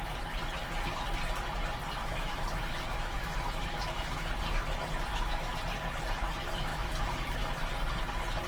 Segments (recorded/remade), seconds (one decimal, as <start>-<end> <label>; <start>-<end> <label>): 0.0-2.0 recorded; 2.0-4.3 remade; 4.3-5.1 recorded; 5.1-5.6 remade; 5.6-6.7 recorded; 6.7-7.5 remade; 7.5-8.5 recorded